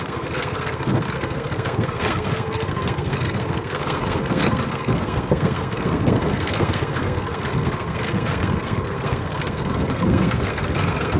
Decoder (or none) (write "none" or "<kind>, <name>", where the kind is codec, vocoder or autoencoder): codec, SNAC